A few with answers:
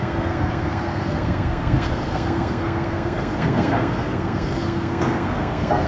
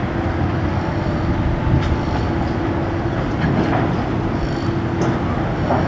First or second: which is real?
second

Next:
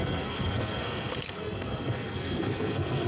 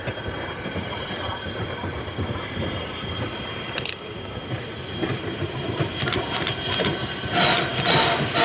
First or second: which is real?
second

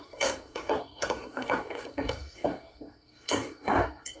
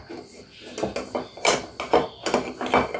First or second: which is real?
second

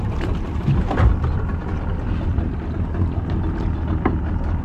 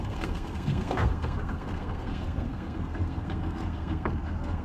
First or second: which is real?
first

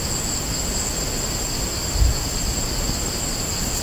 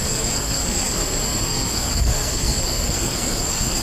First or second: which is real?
first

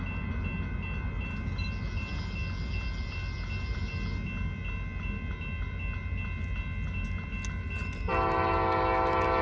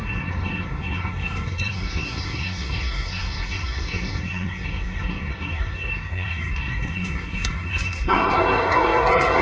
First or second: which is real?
first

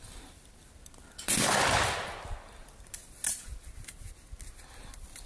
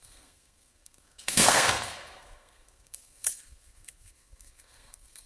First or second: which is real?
first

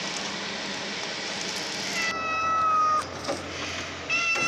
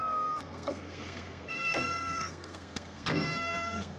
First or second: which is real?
first